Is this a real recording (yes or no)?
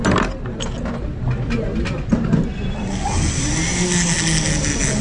yes